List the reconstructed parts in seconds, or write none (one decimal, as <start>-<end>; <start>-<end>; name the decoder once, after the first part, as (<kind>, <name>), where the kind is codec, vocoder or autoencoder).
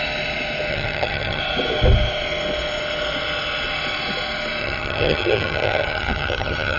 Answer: 0.7-1.4 (vocoder, HiFi-GAN); 4.6-6.8